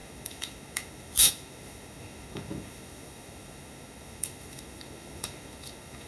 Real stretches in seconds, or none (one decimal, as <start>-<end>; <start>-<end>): none